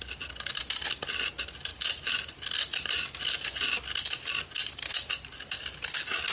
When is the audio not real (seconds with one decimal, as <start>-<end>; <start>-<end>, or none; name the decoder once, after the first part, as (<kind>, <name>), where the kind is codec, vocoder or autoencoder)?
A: 1.7-2.3 (vocoder, BigVGAN v2); 4.6-5.3